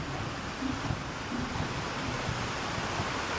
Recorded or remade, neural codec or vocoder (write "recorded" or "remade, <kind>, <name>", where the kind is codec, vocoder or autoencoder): recorded